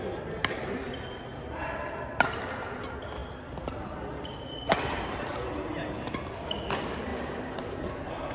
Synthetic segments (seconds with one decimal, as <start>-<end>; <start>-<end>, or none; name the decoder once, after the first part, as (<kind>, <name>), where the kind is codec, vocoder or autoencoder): 1.3-2.0 (vocoder, BigVGAN v2); 7.1-7.6